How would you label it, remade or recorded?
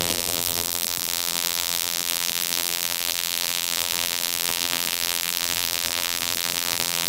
remade